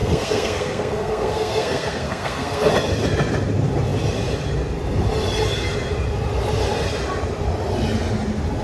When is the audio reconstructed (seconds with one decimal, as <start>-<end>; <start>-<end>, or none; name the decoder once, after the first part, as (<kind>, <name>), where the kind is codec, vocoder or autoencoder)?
0.0-2.7 (codec, SNAC)